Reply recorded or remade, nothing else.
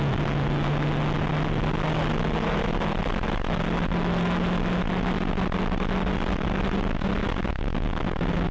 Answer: recorded